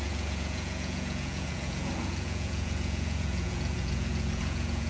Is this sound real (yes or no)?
no